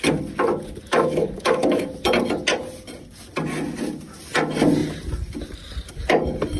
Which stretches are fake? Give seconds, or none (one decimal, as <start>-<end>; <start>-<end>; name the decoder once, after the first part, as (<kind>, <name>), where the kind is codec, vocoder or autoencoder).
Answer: 0.9-1.8 (autoencoder, DAC-VAE)